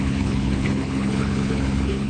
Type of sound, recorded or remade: remade